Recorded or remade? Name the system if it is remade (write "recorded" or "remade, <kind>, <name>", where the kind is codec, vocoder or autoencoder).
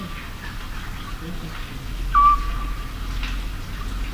recorded